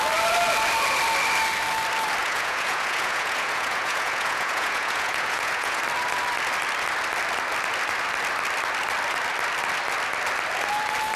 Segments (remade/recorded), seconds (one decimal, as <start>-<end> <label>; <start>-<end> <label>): 0.0-2.2 recorded; 2.2-5.8 remade; 5.8-11.2 recorded